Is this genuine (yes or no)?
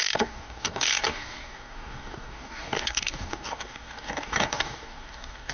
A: no